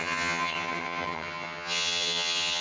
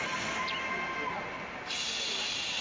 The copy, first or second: first